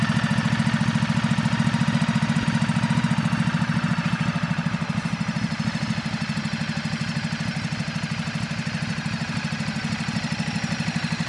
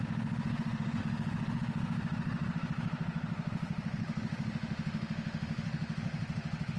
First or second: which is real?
first